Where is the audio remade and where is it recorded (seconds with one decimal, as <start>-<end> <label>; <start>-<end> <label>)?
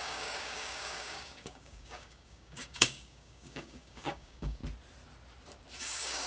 0.0-4.6 remade; 4.6-5.8 recorded; 5.8-6.3 remade